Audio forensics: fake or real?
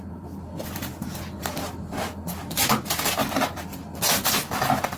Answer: real